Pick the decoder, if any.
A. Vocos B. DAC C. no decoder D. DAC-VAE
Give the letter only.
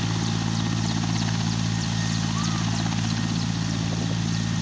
C